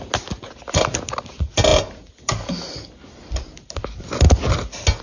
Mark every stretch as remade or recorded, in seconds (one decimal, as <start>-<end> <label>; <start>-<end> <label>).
0.0-5.0 recorded